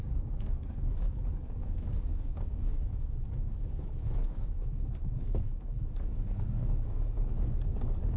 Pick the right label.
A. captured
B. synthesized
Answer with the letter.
B